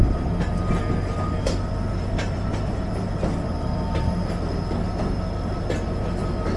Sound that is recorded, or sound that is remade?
recorded